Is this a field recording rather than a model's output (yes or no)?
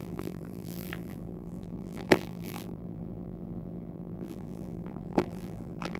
no